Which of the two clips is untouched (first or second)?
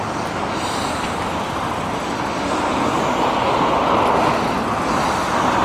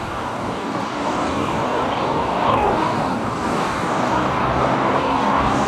first